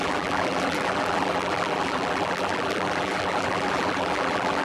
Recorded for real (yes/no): no